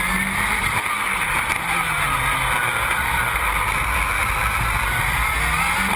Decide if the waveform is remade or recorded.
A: recorded